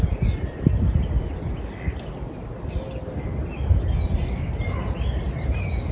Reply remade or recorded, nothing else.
recorded